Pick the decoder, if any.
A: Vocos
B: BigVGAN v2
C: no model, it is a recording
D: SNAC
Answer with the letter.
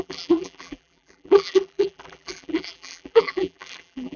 B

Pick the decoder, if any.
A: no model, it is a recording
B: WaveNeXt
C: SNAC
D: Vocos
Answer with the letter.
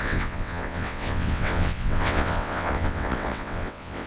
B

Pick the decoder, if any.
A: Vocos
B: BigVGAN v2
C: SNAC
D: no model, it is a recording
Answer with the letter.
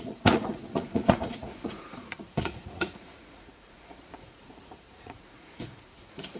A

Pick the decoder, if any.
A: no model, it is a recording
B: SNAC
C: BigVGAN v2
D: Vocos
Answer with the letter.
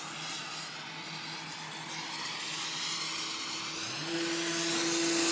A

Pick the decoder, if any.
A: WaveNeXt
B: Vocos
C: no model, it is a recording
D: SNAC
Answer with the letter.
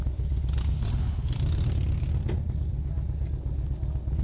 C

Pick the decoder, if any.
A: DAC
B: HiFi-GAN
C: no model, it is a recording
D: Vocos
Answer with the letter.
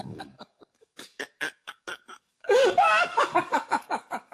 A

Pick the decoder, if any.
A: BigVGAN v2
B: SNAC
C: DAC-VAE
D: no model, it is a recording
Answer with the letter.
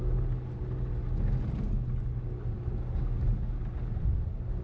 D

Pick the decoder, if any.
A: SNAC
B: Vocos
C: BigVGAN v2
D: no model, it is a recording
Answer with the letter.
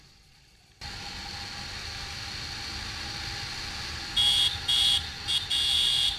D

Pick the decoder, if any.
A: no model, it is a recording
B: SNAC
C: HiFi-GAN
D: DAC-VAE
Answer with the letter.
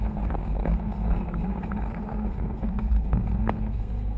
B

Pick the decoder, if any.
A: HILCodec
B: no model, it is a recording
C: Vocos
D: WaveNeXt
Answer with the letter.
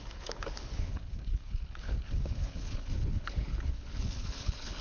A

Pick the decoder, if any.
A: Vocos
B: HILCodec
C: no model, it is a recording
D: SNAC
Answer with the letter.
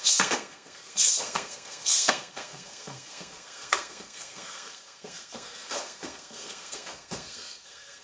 D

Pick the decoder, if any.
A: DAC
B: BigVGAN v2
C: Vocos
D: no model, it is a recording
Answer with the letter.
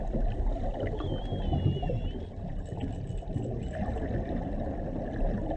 D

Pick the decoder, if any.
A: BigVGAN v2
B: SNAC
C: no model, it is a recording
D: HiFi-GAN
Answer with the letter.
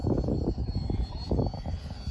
A